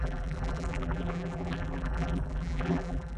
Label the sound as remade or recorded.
remade